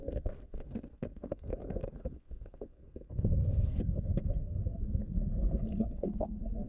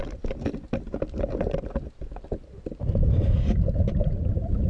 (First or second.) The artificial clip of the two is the first